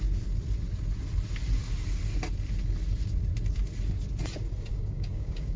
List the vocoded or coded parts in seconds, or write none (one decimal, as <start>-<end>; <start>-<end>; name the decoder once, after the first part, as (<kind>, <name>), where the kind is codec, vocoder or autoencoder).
4.7-5.6 (codec, DAC)